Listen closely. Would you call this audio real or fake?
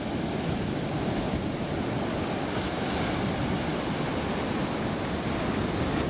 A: real